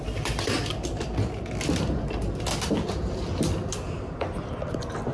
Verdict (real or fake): real